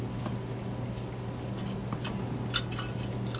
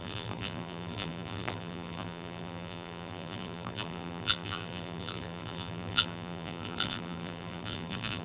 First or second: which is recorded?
first